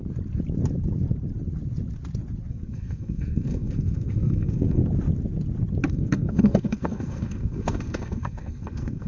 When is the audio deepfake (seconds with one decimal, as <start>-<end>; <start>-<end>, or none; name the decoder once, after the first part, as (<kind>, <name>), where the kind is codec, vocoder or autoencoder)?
2.5-4.8 (codec, SNAC); 5.9-9.1